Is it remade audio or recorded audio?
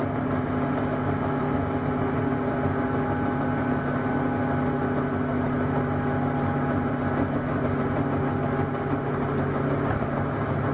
recorded